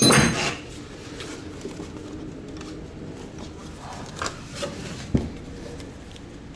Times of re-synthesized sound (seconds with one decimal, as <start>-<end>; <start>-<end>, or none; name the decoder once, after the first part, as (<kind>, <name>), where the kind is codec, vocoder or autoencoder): none